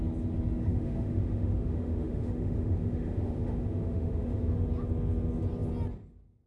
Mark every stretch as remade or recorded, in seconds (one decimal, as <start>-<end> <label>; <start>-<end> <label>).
0.0-0.7 recorded; 0.7-4.5 remade; 4.5-6.5 recorded